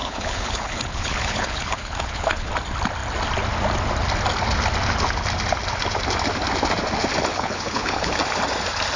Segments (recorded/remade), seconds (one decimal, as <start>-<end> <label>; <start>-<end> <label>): 0.0-2.5 remade; 2.5-7.3 recorded; 7.3-8.1 remade; 8.1-9.0 recorded